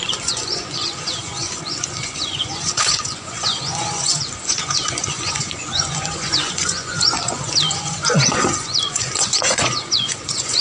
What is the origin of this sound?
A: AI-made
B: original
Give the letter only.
A